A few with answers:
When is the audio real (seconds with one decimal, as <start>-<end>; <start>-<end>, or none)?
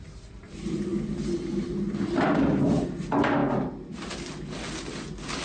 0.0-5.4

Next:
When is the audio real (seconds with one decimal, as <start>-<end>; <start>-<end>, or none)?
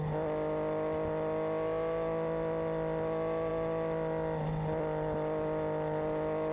0.0-6.5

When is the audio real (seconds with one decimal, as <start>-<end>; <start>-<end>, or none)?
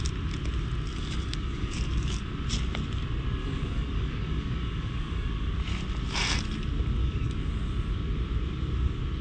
0.0-0.9; 2.2-3.4; 5.5-7.0; 7.5-9.2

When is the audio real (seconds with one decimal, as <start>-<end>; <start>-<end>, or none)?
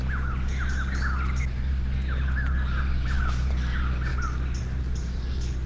0.0-5.7